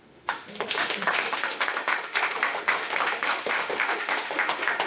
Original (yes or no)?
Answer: no